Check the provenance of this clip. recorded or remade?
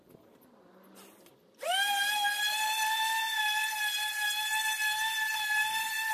recorded